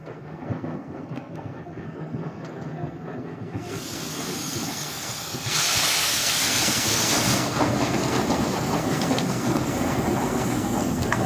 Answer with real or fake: fake